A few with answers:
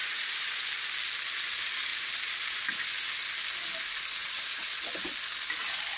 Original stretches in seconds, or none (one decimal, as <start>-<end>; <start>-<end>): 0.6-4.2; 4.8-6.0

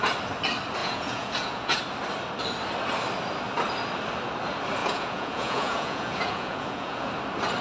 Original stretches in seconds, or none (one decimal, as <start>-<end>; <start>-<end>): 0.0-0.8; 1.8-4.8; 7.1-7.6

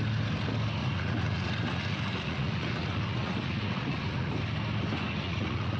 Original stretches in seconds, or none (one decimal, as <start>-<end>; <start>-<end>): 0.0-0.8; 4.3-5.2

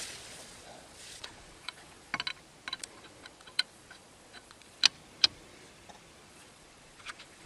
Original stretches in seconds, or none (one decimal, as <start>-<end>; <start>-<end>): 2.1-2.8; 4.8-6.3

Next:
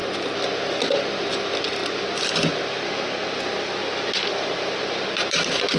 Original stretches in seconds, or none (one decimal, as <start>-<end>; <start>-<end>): 0.0-5.8

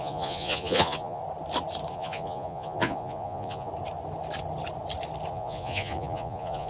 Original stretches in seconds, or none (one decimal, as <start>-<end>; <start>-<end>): 1.2-1.9; 3.7-5.3

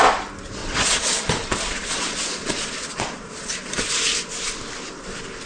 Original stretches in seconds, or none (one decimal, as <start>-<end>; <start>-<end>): 0.0-0.6; 3.9-5.5

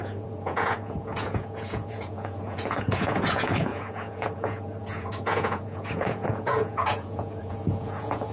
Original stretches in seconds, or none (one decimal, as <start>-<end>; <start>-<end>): none